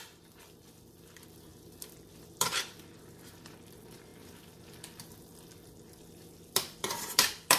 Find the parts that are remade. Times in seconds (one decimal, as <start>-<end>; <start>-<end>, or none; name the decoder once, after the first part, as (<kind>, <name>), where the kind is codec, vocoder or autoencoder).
0.0-7.6 (vocoder, BigVGAN v2)